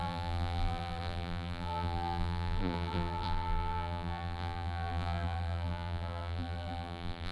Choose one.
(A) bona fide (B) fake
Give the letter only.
B